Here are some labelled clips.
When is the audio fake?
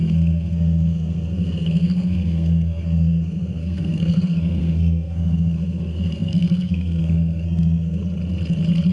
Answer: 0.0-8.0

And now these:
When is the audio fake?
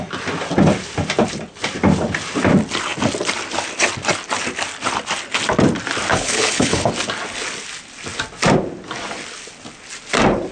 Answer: 6.1-6.9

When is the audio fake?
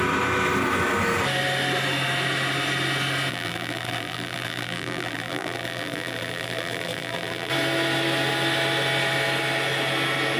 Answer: 3.3-7.5